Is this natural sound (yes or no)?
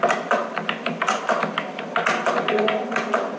yes